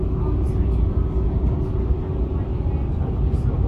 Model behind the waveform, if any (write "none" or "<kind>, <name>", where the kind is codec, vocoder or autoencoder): none